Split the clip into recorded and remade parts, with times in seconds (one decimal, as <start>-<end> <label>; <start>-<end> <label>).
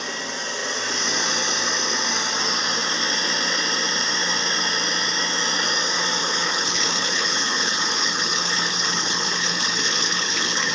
0.0-6.2 recorded; 6.2-10.7 remade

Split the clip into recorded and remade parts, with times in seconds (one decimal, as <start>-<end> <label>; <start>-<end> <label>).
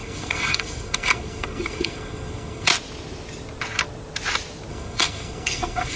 0.0-2.7 remade; 2.7-4.7 recorded; 4.7-6.0 remade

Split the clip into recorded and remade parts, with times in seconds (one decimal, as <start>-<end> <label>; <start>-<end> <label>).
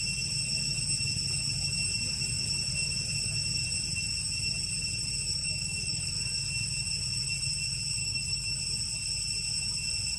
0.0-5.4 recorded; 5.4-6.1 remade; 6.1-8.0 recorded; 8.0-8.6 remade; 8.6-10.2 recorded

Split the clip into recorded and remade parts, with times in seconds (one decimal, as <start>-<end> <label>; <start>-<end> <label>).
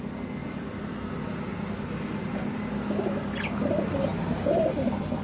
0.0-0.4 recorded; 0.4-1.1 remade; 1.1-5.2 recorded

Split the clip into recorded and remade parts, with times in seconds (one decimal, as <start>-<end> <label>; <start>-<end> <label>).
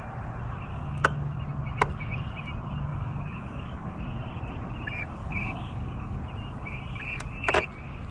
0.0-0.7 recorded; 0.7-1.4 remade; 1.4-2.9 recorded; 2.9-4.0 remade; 4.0-5.2 recorded; 5.2-6.2 remade; 6.2-8.1 recorded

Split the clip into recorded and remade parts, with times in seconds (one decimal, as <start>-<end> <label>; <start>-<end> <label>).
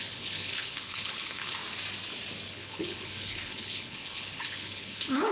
0.0-1.6 remade; 1.6-2.5 recorded; 2.5-5.3 remade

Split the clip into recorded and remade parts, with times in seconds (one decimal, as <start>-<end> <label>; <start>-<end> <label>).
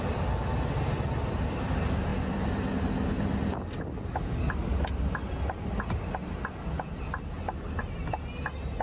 0.0-8.8 recorded